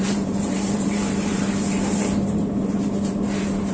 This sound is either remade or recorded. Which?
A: remade